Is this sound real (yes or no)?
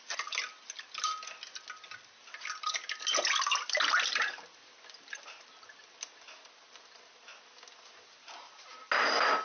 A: yes